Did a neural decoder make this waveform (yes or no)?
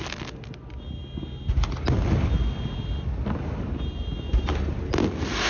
no